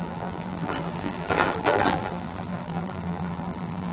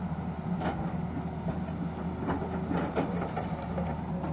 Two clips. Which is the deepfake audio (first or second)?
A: first